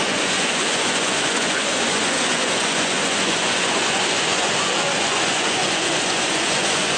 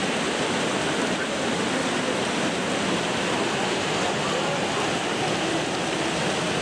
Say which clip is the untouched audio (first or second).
second